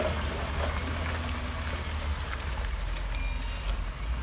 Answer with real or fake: real